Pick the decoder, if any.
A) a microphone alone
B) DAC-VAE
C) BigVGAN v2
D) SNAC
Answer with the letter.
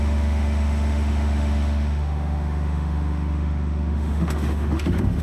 B